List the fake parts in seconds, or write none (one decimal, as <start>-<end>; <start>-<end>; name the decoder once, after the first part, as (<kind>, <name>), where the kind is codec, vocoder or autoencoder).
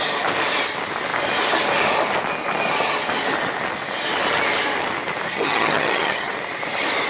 5.3-6.3 (vocoder, HiFi-GAN)